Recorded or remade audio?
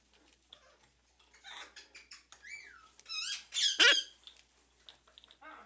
recorded